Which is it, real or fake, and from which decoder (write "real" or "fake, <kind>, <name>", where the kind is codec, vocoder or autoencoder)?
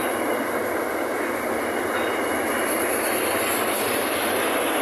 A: real